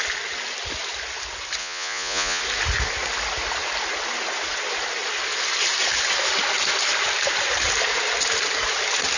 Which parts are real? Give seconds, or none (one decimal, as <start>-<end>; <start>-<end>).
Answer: 0.0-1.6; 2.4-9.2